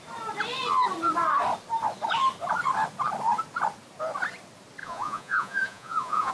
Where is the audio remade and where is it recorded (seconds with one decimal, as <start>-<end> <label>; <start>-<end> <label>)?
0.0-4.8 recorded; 4.8-6.3 remade